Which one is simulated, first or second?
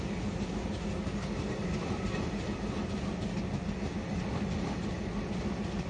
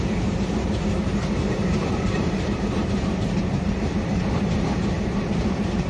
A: second